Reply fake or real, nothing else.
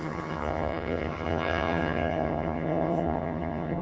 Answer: fake